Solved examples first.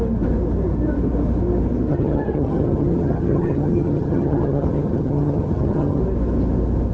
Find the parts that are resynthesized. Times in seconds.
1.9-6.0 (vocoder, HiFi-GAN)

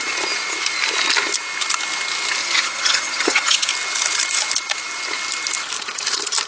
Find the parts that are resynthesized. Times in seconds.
2.4-3.7 (vocoder, HiFi-GAN)

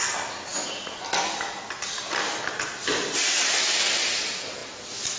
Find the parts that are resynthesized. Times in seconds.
none